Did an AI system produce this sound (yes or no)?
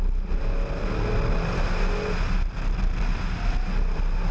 no